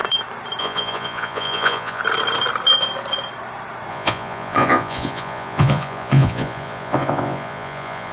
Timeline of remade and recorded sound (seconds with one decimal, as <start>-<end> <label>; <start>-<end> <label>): 0.0-0.6 recorded; 0.6-2.0 remade; 2.0-3.9 recorded; 3.9-8.1 remade